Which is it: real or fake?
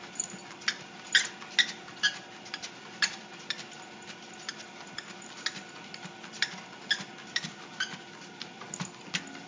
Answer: real